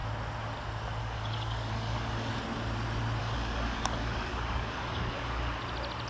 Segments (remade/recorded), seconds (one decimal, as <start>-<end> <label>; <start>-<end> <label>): 0.0-1.0 recorded; 1.0-2.3 remade; 2.3-3.2 recorded; 3.2-5.6 remade; 5.6-6.1 recorded